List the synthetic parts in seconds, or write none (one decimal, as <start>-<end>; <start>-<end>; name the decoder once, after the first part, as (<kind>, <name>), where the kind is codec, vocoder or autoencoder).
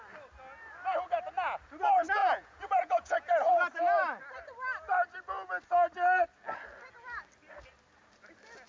2.2-3.5 (vocoder, Vocos)